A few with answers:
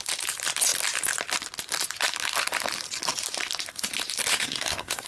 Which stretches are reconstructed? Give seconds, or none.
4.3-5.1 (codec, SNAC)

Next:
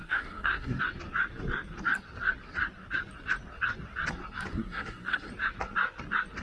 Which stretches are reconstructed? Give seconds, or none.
0.0-0.8 (codec, SNAC); 4.5-5.3

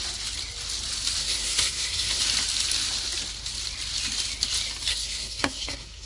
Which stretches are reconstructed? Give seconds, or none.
1.2-2.2 (codec, SNAC); 4.9-6.1

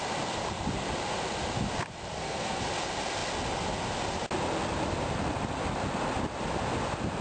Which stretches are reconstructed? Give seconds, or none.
2.1-2.6 (codec, SNAC)

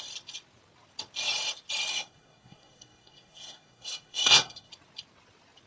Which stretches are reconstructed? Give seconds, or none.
1.9-4.7 (codec, SNAC)